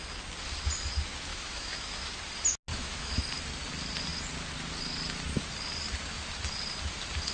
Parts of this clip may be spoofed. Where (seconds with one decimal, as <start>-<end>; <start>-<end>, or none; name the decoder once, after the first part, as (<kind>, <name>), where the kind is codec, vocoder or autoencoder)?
1.3-2.1 (autoencoder, DAC-VAE); 2.7-3.2